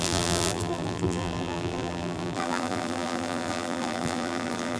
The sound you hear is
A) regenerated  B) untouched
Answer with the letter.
A